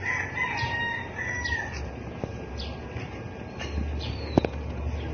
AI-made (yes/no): no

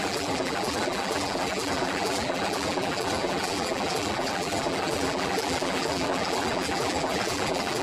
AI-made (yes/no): yes